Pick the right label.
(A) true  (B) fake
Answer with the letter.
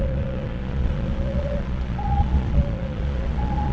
B